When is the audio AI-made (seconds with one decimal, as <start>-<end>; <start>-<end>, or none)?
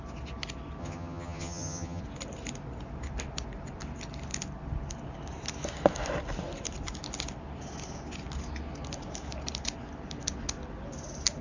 0.8-2.0